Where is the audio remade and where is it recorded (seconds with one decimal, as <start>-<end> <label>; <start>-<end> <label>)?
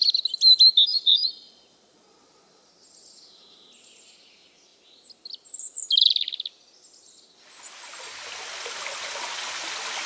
0.0-0.9 recorded; 0.9-2.7 remade; 2.7-10.1 recorded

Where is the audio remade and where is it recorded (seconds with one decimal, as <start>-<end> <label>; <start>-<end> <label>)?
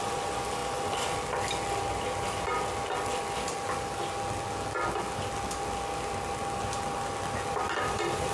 0.0-8.3 recorded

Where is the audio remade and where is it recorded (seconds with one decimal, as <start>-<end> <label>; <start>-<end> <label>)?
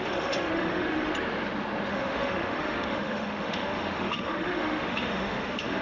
0.0-1.1 remade; 1.1-1.9 recorded; 1.9-5.8 remade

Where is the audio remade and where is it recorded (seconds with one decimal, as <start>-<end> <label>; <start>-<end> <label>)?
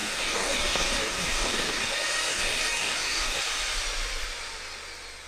0.0-1.8 remade; 1.8-2.3 recorded; 2.3-3.4 remade; 3.4-5.3 recorded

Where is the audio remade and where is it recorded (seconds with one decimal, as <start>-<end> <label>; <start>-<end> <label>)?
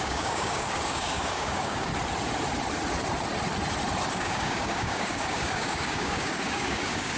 0.0-1.9 remade; 1.9-4.1 recorded; 4.1-7.2 remade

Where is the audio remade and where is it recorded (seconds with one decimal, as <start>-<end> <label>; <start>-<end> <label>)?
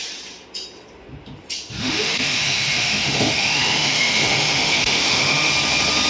0.0-1.8 recorded; 1.8-5.5 remade; 5.5-6.1 recorded